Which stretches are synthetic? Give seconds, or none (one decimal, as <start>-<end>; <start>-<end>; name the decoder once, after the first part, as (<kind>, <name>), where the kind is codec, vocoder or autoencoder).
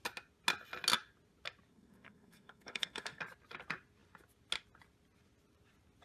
1.7-3.2 (codec, SNAC)